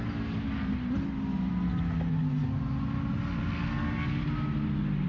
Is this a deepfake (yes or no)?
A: no